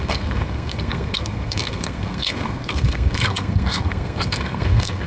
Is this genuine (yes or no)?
no